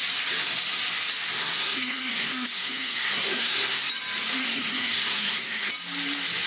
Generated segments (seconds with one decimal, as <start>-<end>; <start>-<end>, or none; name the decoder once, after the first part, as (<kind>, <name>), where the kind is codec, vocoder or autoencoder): 1.4-3.9 (codec, SNAC); 4.4-5.7